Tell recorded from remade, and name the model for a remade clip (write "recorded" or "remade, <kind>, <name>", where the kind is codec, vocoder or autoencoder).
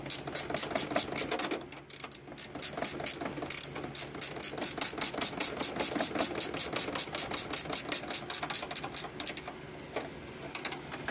recorded